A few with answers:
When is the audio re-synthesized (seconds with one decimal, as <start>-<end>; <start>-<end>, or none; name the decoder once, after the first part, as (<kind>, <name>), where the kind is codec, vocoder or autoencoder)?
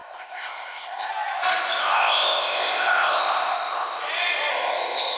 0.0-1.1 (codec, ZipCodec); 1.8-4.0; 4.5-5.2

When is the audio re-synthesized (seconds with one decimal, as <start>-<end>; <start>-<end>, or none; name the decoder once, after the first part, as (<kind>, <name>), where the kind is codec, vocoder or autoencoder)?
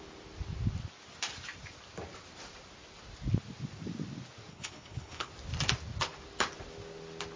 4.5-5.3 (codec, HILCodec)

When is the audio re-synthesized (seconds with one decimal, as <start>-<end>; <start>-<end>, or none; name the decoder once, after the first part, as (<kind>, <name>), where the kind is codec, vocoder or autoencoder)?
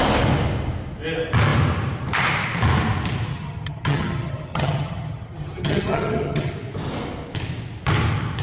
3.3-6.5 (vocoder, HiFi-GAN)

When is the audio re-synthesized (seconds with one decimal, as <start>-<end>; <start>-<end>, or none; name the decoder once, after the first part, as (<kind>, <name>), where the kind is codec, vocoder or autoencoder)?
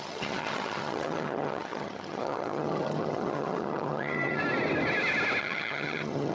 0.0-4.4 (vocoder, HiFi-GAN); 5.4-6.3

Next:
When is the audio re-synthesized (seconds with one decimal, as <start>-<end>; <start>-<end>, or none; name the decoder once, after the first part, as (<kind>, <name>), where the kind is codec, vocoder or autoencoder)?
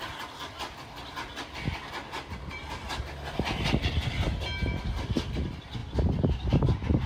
none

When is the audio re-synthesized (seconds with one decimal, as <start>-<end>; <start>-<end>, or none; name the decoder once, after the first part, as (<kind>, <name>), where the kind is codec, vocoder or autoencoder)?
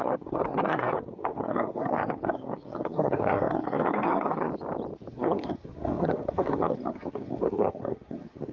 0.0-4.5 (codec, SNAC); 5.1-8.5